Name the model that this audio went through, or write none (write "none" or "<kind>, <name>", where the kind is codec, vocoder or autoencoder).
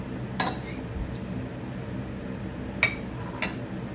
none